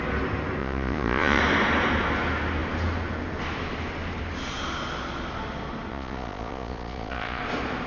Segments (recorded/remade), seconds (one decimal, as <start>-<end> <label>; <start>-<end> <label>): 0.0-0.6 recorded; 0.6-1.4 remade; 1.4-5.9 recorded; 5.9-7.4 remade; 7.4-7.9 recorded